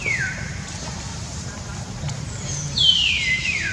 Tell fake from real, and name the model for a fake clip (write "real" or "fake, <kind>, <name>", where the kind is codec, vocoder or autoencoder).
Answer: fake, vocoder, BigVGAN v2